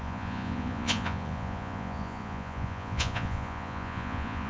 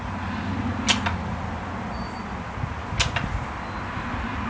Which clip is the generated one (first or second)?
first